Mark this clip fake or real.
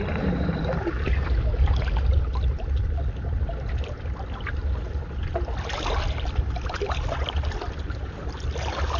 real